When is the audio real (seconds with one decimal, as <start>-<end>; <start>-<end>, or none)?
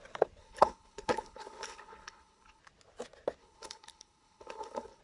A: 0.0-0.4; 2.6-3.4